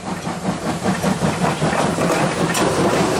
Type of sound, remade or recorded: remade